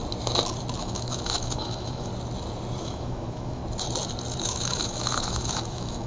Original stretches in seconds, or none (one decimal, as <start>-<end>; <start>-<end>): 0.0-0.8; 2.1-2.8; 3.6-4.4